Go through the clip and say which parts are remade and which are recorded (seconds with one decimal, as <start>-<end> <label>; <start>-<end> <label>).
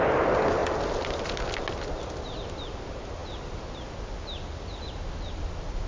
0.0-5.9 recorded